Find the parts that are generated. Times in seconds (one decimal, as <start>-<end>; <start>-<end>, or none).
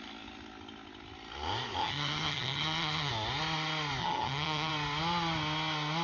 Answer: 1.8-3.1; 4.0-4.7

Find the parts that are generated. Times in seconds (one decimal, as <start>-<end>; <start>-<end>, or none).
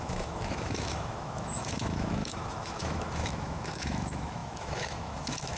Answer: 0.0-5.6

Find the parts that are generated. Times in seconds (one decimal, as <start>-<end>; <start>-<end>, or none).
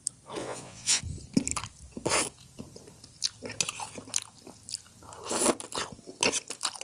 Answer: 0.4-1.0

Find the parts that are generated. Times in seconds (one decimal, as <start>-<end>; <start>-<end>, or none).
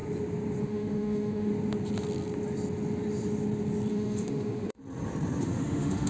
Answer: 0.6-1.5; 3.9-4.8; 5.4-6.1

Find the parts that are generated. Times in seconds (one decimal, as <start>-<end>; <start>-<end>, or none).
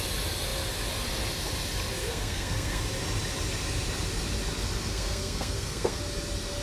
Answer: 2.0-2.8; 4.9-6.0